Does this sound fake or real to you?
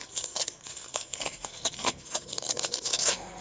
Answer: fake